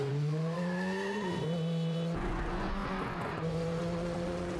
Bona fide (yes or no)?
no